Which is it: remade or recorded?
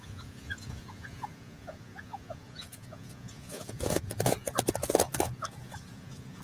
remade